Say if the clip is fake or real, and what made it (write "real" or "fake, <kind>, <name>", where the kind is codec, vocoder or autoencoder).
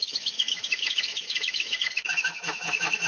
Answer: fake, autoencoder, DAC-VAE